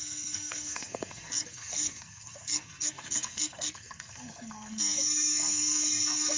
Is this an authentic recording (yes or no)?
no